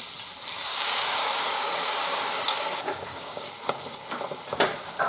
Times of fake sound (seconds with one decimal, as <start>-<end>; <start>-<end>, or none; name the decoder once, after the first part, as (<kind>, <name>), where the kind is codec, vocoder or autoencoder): 0.7-3.5 (codec, DAC)